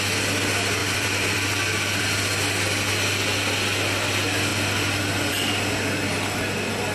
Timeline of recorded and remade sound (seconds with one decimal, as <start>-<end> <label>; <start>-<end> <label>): 0.0-0.8 recorded; 0.8-2.0 remade; 2.0-6.9 recorded